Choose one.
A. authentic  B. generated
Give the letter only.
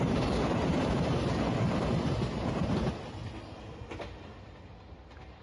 A